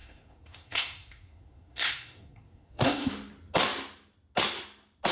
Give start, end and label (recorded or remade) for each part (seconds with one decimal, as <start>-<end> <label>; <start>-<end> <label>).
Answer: 0.0-3.1 remade; 3.1-5.1 recorded